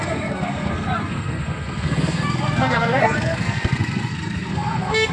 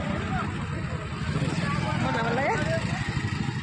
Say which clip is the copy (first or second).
first